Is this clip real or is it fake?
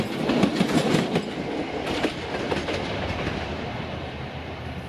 real